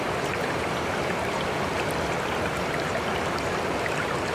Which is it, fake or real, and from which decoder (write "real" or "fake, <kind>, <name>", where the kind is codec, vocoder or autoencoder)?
fake, vocoder, BigVGAN v2